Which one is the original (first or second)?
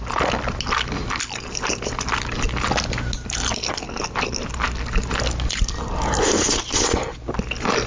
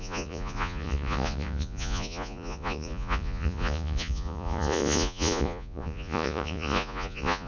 first